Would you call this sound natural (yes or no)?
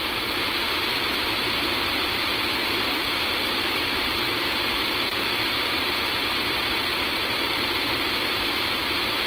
no